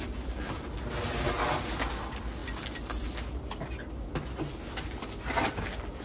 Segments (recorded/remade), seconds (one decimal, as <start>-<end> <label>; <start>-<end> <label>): 0.0-6.0 recorded